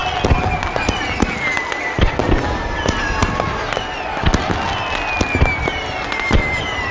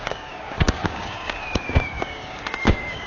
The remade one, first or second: second